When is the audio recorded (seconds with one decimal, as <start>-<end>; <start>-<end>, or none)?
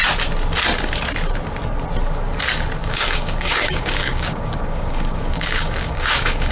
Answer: 0.0-2.8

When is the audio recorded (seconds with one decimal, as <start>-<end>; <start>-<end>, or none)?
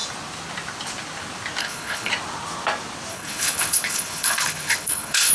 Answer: 0.0-1.6; 2.1-3.1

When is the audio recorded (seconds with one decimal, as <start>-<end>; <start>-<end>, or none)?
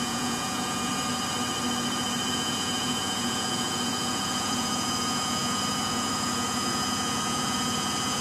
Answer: 0.9-2.3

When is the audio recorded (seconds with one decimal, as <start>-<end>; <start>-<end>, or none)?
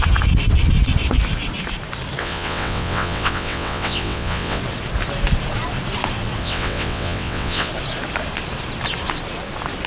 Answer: 0.0-2.2; 4.6-6.4; 7.7-9.9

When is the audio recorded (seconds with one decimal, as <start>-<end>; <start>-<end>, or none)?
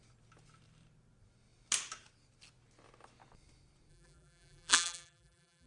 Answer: 0.0-3.9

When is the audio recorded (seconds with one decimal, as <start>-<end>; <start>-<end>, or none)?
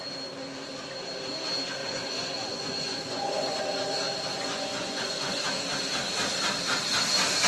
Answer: 0.0-1.8; 3.6-4.3; 5.4-7.5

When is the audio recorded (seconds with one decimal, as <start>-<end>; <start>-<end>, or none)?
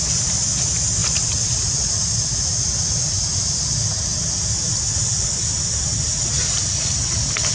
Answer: 0.0-7.5